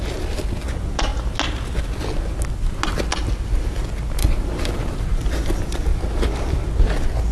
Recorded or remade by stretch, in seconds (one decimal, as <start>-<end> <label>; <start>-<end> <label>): 0.0-4.2 recorded; 4.2-5.0 remade; 5.0-7.3 recorded